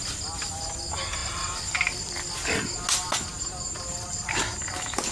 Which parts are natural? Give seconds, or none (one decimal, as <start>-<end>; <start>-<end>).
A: 0.0-5.1